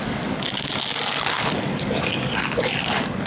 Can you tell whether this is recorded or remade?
remade